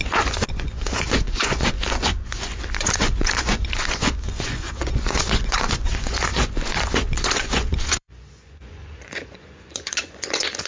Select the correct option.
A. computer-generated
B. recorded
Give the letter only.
A